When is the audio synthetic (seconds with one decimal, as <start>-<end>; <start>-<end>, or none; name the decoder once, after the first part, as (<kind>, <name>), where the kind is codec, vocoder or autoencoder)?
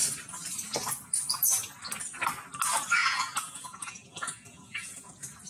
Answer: 3.0-5.1 (vocoder, Vocos)